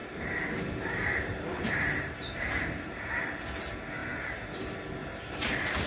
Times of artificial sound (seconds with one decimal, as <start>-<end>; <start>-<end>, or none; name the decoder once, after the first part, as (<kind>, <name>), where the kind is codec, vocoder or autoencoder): 0.0-3.0 (vocoder, BigVGAN v2); 4.0-4.6; 5.0-5.9